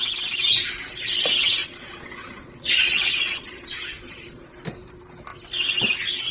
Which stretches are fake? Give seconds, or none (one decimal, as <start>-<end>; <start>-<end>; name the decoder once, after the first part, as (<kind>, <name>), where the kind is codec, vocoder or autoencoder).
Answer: 1.6-4.5 (vocoder, Vocos)